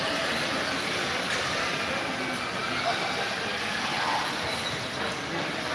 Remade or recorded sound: recorded